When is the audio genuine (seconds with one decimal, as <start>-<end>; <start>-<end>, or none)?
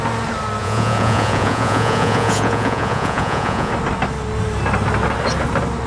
0.0-0.6; 3.7-5.9